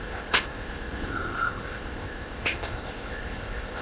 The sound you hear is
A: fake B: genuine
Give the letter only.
A